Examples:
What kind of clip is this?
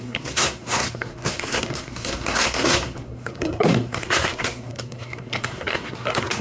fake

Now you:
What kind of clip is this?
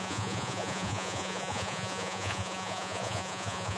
fake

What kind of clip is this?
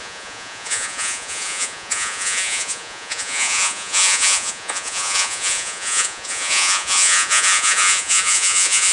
fake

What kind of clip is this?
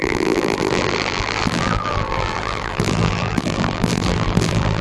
fake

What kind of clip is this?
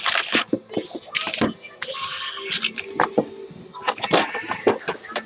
real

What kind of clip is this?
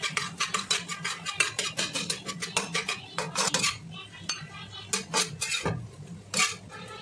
real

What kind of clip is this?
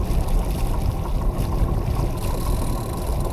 real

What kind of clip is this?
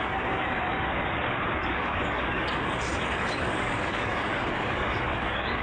fake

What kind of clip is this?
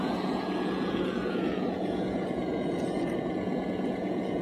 fake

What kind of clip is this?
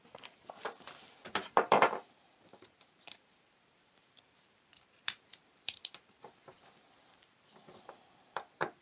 fake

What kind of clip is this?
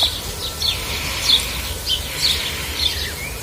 fake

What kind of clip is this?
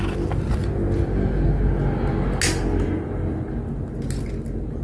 real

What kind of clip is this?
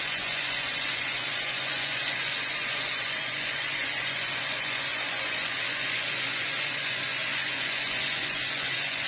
fake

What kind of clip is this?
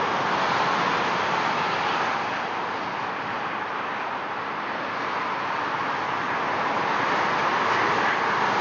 real